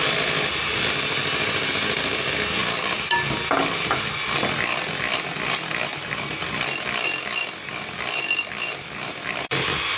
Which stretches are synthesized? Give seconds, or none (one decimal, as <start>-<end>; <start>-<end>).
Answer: none